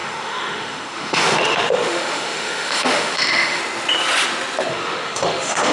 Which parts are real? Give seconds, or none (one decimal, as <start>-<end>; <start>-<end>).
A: 3.6-4.7